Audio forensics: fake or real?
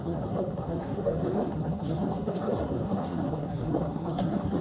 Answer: fake